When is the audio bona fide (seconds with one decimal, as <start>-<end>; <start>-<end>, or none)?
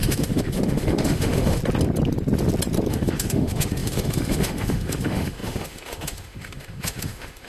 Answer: 1.6-2.9